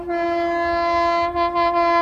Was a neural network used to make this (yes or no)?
no